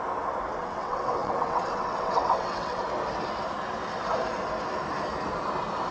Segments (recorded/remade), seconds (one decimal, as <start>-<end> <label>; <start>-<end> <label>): 0.0-0.6 recorded; 0.6-2.8 remade; 2.8-5.9 recorded

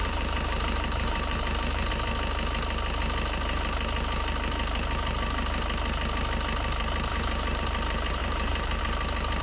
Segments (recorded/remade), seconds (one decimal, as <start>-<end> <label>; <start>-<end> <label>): 0.0-1.9 remade; 1.9-7.1 recorded; 7.1-7.6 remade; 7.6-8.2 recorded; 8.2-8.8 remade; 8.8-9.4 recorded

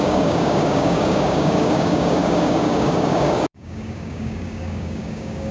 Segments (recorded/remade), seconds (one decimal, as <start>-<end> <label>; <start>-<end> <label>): 0.0-5.5 remade

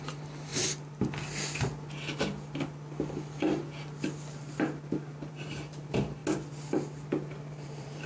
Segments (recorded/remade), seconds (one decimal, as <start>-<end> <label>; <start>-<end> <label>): 0.0-0.5 remade; 0.5-5.3 recorded; 5.3-6.2 remade; 6.2-7.5 recorded; 7.5-8.1 remade

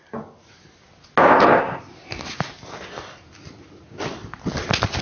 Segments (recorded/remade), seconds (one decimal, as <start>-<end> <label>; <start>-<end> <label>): 0.0-1.3 recorded; 1.3-1.8 remade; 1.8-5.0 recorded

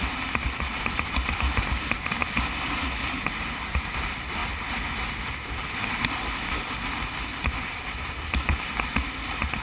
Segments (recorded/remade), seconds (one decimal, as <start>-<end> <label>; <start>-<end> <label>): 0.0-9.6 recorded

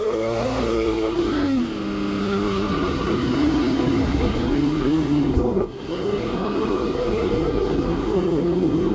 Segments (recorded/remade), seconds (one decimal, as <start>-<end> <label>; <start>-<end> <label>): 0.0-1.6 remade; 1.6-2.2 recorded; 2.2-8.9 remade